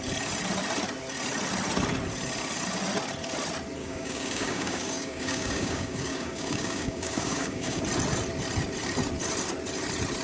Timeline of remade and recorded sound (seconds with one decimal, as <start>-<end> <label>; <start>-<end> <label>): 0.0-3.8 recorded; 3.8-7.8 remade; 7.8-10.2 recorded